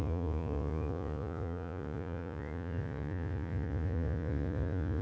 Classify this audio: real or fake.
fake